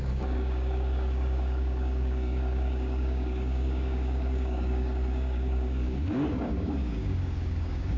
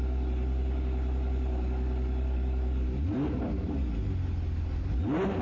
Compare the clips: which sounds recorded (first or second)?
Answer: second